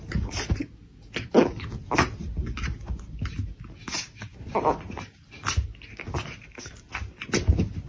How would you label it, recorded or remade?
recorded